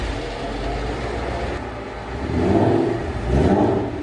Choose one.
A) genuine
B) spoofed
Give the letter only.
A